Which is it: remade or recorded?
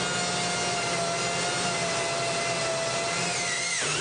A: recorded